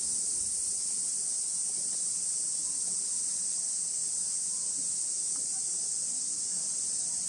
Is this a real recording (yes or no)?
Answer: yes